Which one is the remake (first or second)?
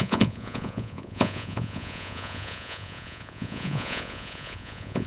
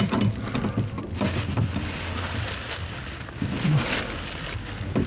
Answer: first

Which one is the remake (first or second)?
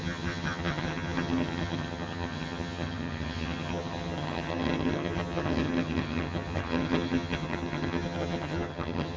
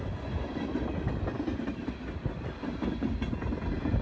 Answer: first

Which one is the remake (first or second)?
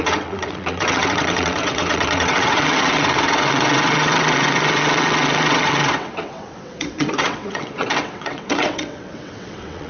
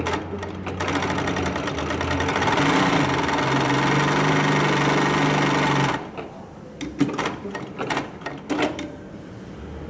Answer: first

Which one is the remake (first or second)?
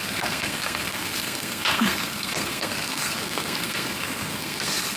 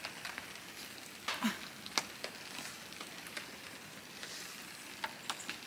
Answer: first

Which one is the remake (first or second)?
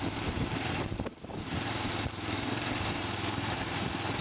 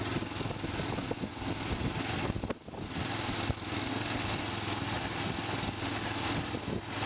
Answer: first